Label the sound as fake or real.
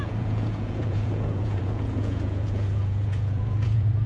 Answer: fake